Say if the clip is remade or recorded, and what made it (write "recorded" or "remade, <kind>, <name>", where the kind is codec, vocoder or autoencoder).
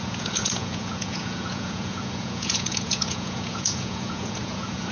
remade, vocoder, Vocos